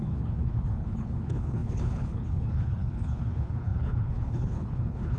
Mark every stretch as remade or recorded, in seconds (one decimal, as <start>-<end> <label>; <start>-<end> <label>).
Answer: 0.0-5.2 remade